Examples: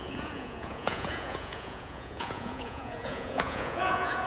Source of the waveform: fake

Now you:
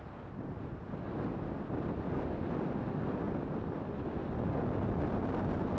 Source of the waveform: real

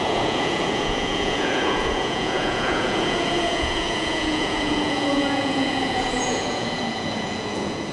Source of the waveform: fake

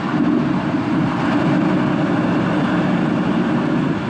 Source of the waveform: real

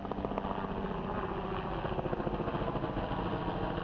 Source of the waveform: real